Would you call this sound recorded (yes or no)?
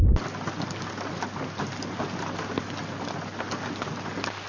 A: yes